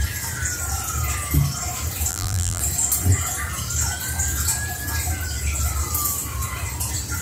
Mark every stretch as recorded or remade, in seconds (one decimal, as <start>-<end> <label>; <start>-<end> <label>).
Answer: 0.0-2.1 recorded; 2.1-2.6 remade; 2.6-7.2 recorded